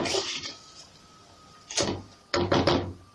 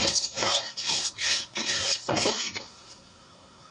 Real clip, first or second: first